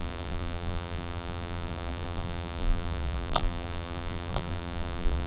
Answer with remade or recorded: remade